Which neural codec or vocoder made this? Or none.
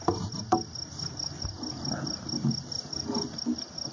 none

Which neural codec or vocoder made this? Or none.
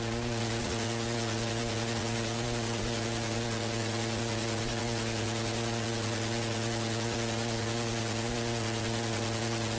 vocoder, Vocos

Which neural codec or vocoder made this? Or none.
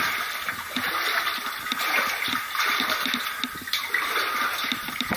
none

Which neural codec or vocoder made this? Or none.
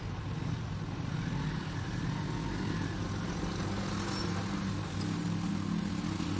none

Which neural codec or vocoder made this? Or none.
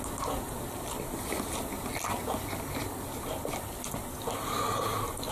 none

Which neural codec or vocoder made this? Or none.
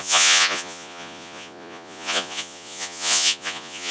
vocoder, Vocos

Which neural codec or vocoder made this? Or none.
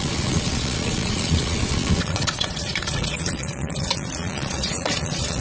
vocoder, Vocos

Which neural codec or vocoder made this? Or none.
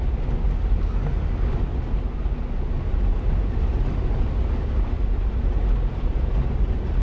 none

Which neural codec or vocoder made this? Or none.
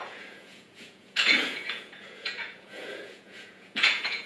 vocoder, Vocos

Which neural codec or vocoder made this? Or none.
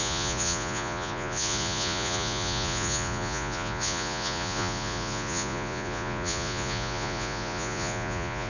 vocoder, Vocos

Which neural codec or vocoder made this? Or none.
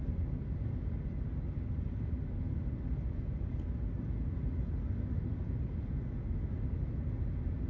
none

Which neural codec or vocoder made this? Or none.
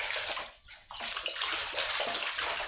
none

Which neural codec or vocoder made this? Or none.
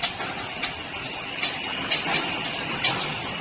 none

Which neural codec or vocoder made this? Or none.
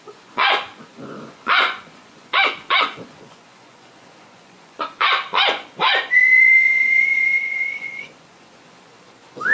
vocoder, Vocos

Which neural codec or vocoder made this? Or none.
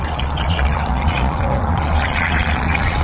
vocoder, Vocos